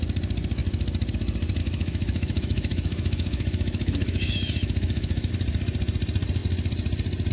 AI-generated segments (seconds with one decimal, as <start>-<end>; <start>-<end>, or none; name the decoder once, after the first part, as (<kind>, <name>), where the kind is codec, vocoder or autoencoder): 1.6-5.3 (autoencoder, DAC-VAE)